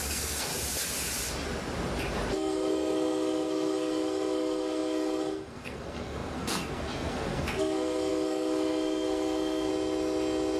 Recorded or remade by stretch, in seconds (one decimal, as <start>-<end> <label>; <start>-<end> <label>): 0.0-0.5 remade; 0.5-2.3 recorded; 2.3-9.7 remade; 9.7-10.6 recorded